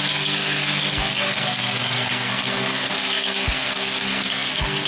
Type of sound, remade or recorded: remade